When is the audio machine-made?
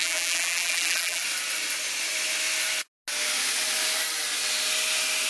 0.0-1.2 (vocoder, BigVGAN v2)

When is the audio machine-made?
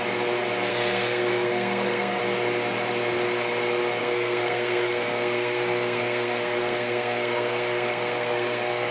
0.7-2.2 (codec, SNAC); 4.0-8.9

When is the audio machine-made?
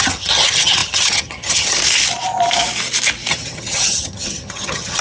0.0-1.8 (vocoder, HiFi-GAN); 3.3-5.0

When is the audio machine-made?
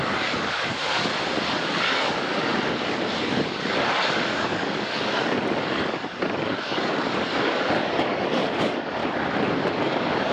0.0-1.1 (codec, DAC); 1.6-2.5; 3.2-9.0; 9.8-10.3